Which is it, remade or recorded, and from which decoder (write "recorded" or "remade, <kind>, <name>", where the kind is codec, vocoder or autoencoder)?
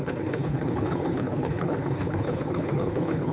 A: remade, codec, HILCodec